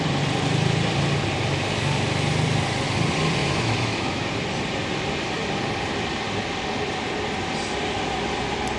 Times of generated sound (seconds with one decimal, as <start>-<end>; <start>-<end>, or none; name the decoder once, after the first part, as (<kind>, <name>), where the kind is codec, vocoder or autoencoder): 3.4-4.3 (autoencoder, DAC-VAE)